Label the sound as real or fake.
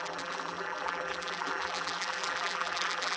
fake